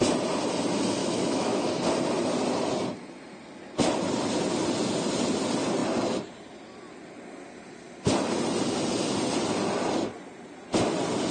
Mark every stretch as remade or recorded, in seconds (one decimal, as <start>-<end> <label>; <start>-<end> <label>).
0.0-1.0 recorded; 1.0-1.7 remade; 1.7-11.3 recorded